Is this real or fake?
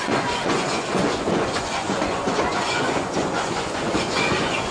fake